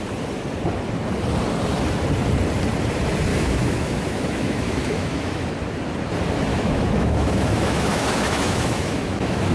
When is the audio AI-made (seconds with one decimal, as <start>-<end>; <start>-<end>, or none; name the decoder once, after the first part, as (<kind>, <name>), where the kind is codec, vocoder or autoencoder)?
3.3-5.5 (autoencoder, DAC-VAE); 6.5-9.5